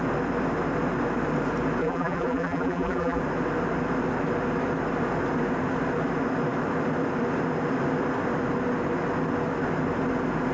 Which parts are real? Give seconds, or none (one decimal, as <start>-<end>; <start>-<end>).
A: 0.0-1.8; 3.2-10.5

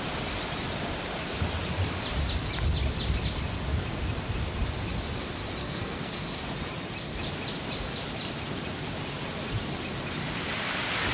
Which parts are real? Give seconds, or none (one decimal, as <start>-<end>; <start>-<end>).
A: 0.0-5.6; 6.4-11.1

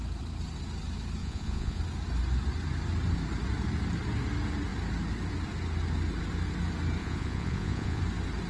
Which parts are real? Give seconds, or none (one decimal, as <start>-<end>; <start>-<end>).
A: 0.0-1.2; 1.8-7.0; 8.0-8.5

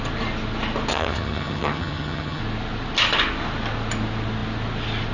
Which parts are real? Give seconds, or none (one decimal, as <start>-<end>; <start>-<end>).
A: 0.0-0.9; 2.4-5.1

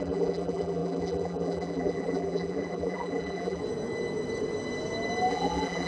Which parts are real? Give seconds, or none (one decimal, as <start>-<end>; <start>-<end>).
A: 3.6-5.3